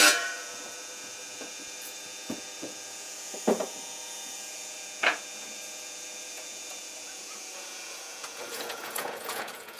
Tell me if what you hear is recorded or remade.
remade